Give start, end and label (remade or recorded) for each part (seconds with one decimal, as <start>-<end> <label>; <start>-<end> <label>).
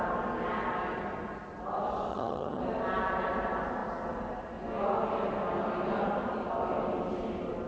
0.0-2.1 recorded; 2.1-2.6 remade; 2.6-7.7 recorded